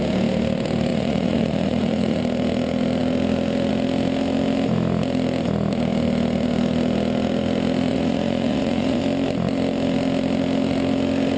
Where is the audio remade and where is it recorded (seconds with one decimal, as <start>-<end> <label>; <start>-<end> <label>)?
0.0-0.9 recorded; 0.9-2.2 remade; 2.2-7.9 recorded; 7.9-9.0 remade; 9.0-11.4 recorded